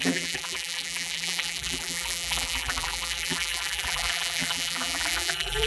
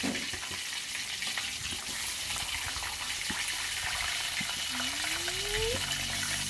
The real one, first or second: second